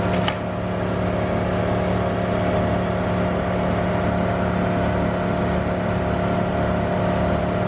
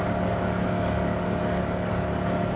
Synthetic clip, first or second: second